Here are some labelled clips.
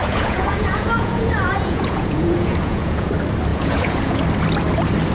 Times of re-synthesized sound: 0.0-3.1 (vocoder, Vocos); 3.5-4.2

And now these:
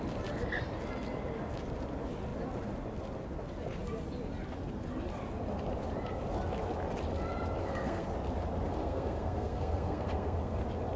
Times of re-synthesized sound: 7.6-8.1 (codec, SNAC); 8.8-10.6

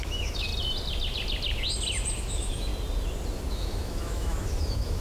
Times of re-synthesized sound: 0.0-0.5 (autoencoder, DAC-VAE); 2.2-2.7; 3.5-5.0

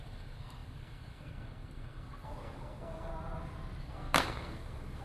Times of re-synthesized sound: 0.0-3.1 (codec, SNAC); 3.8-5.0

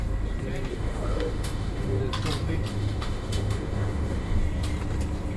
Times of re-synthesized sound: 0.7-2.0 (autoencoder, DAC-VAE); 2.7-4.4

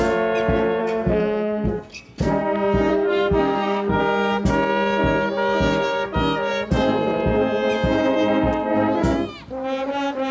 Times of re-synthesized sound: 0.8-2.3 (codec, SNAC); 2.9-4.0

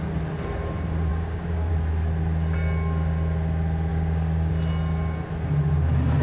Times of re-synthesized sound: 1.1-1.7 (codec, DAC); 3.9-4.5

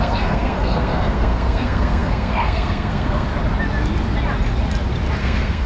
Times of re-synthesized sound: 0.0-3.3 (codec, SNAC); 5.2-5.7